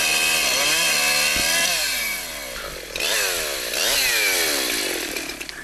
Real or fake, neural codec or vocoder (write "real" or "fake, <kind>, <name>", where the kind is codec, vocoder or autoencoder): real